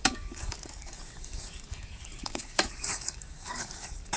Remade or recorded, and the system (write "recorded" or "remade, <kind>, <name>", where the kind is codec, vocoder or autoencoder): remade, codec, DAC